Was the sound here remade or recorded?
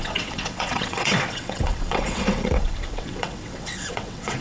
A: remade